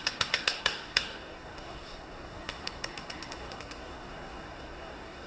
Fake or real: fake